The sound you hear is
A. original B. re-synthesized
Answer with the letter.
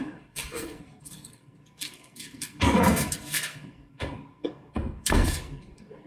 B